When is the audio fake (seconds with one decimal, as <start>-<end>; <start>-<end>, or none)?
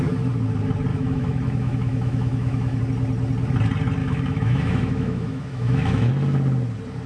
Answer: 0.9-2.8; 4.0-6.1